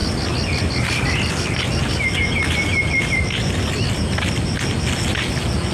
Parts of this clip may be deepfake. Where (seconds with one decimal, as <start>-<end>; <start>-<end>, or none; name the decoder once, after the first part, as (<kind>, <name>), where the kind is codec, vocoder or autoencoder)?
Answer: none